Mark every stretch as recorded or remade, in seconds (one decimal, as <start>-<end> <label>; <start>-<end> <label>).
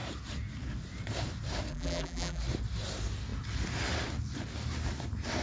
0.0-1.7 recorded; 1.7-2.4 remade; 2.4-5.4 recorded